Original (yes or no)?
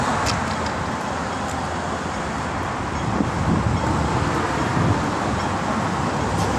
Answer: yes